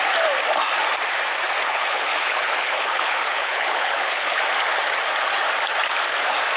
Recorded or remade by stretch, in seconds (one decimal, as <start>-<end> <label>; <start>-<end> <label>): 0.0-1.6 recorded; 1.6-4.4 remade; 4.4-6.6 recorded